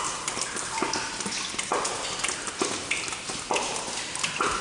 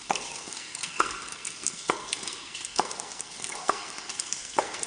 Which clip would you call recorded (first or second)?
first